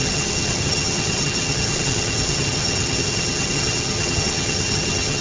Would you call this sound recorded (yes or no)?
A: no